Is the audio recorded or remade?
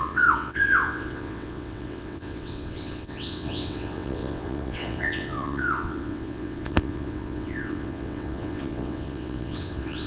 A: remade